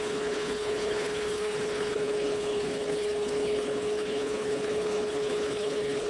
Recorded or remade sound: remade